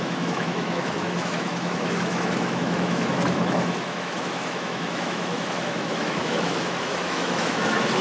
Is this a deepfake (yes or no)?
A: yes